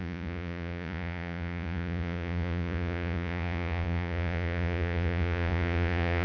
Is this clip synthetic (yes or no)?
yes